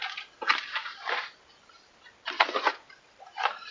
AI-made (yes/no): no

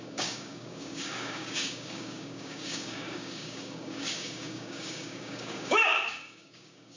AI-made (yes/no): yes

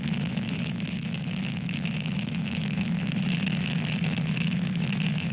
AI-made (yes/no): yes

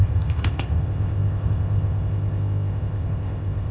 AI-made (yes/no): yes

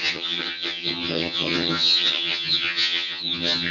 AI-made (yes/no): yes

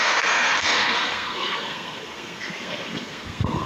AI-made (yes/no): yes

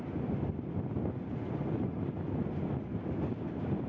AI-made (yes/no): no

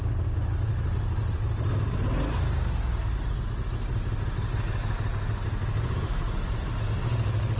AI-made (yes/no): no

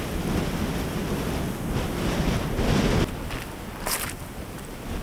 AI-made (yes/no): no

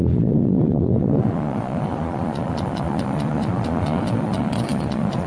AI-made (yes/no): yes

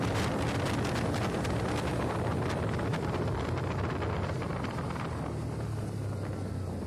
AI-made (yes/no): no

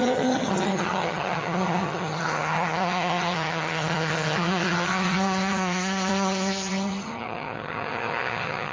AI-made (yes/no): yes